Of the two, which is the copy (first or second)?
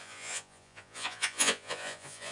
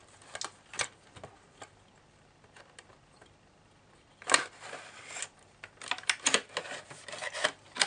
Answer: first